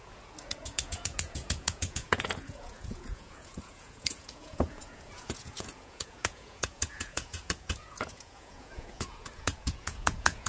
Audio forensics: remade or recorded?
remade